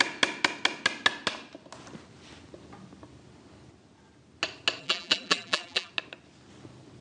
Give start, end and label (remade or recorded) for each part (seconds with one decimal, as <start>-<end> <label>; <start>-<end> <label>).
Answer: 0.0-4.8 recorded; 4.8-5.9 remade; 5.9-7.0 recorded